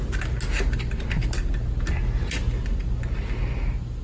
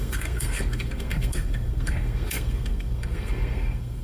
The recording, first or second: first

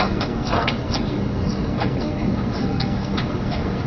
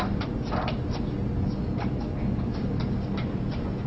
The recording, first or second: second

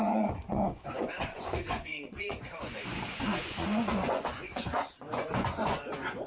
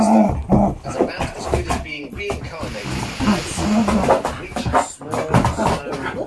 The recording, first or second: second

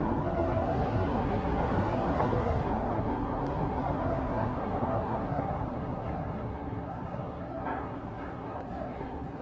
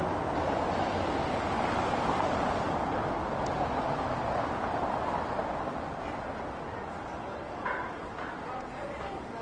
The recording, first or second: second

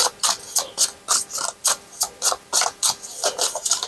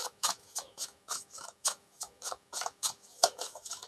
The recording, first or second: first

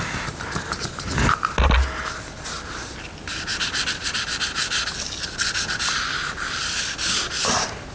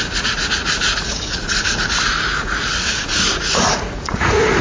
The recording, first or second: first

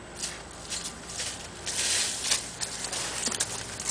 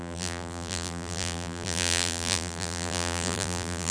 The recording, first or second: first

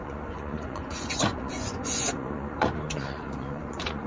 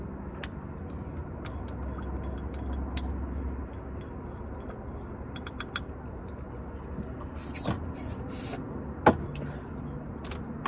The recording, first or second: second